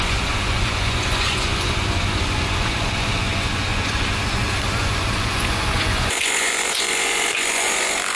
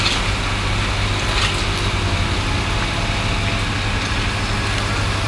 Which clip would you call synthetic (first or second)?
first